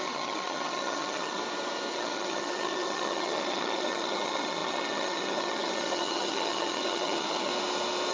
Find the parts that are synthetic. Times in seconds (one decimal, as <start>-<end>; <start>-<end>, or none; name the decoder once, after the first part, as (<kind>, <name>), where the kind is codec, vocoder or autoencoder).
0.0-1.4 (vocoder, HiFi-GAN); 1.9-7.5